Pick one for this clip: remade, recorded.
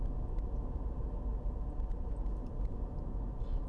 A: recorded